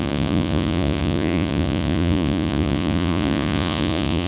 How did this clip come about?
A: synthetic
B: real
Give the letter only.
A